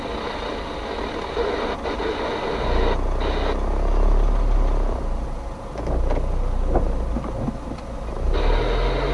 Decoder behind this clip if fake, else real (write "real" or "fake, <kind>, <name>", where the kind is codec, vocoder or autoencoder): real